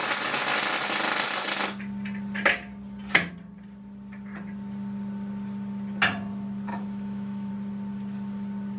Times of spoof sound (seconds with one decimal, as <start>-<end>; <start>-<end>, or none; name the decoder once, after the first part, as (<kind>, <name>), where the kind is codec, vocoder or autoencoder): 6.7-7.5 (autoencoder, DAC-VAE)